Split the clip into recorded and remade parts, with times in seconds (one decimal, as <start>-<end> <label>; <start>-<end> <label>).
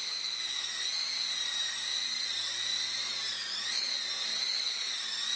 0.0-0.7 remade; 0.7-5.4 recorded